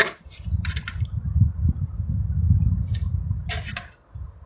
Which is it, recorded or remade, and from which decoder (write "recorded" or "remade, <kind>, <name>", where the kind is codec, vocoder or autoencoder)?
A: recorded